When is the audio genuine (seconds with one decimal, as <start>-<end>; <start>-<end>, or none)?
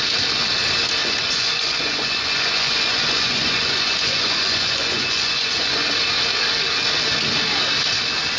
0.0-1.0; 5.9-8.4